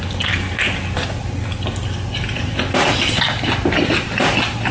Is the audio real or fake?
real